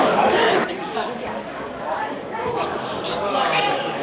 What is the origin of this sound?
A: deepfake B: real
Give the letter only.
A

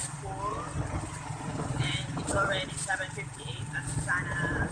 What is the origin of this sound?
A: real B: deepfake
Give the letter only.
B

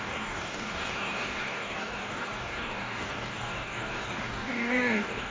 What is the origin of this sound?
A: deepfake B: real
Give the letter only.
A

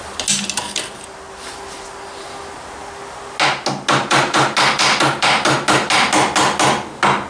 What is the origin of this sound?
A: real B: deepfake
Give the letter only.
A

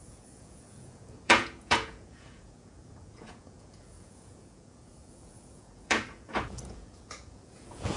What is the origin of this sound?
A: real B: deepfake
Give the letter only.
B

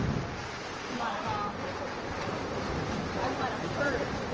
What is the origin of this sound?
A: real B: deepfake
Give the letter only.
B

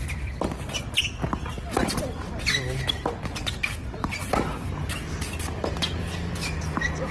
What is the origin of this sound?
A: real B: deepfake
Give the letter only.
A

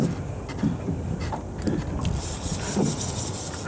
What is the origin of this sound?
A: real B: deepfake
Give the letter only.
A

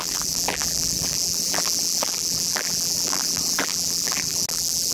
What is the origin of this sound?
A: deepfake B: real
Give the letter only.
A